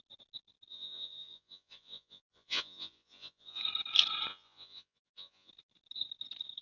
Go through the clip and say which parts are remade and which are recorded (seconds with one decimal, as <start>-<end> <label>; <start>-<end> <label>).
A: 0.0-0.7 recorded; 0.7-3.6 remade; 3.6-4.3 recorded; 4.3-5.5 remade; 5.5-6.6 recorded